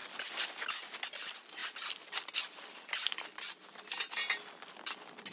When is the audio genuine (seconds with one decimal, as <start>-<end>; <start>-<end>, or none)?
0.0-5.3